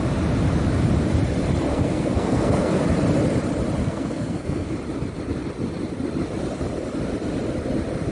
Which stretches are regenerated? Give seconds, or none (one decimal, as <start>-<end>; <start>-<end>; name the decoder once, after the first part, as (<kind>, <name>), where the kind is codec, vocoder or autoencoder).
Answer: 1.7-2.8 (codec, SNAC); 3.8-4.7

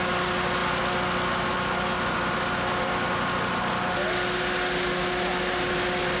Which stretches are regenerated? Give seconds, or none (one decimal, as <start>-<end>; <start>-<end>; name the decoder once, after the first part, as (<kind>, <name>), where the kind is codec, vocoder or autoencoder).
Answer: none

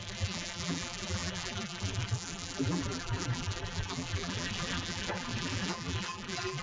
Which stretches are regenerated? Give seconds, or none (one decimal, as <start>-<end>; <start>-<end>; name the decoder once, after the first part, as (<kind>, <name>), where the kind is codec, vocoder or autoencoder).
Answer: 0.0-6.6 (vocoder, BigVGAN v2)

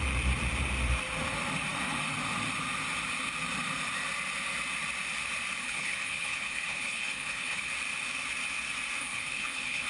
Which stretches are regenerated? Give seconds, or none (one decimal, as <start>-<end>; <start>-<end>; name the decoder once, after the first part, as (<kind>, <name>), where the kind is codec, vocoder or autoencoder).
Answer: 5.6-7.7 (codec, HILCodec); 9.0-9.9

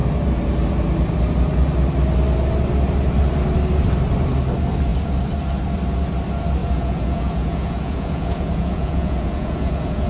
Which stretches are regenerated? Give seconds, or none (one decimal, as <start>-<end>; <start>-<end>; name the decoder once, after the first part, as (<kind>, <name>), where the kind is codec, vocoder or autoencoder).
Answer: 6.6-10.1 (vocoder, Vocos)

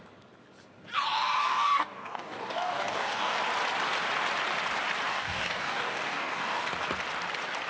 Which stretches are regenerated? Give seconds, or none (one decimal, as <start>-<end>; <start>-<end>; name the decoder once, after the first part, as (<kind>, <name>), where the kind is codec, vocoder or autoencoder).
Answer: 1.4-3.4 (codec, DAC); 5.1-6.7

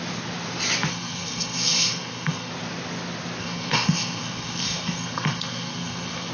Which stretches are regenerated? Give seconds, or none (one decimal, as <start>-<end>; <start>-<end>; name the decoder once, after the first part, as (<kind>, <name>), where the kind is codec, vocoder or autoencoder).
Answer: 0.9-2.5 (codec, SNAC); 3.4-6.3

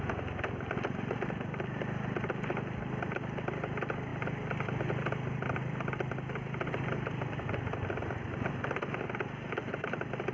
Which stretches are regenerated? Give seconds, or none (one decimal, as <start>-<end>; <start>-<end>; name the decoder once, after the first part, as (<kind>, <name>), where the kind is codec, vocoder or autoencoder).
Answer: none